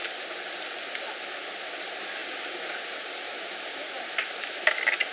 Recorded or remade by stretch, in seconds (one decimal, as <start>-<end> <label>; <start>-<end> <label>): 0.0-5.1 recorded